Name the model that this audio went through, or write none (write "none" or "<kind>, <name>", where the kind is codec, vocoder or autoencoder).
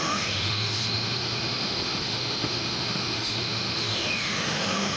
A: autoencoder, DAC-VAE